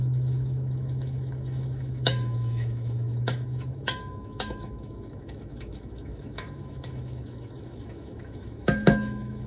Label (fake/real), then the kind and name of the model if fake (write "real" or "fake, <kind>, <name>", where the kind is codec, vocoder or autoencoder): fake, autoencoder, DAC-VAE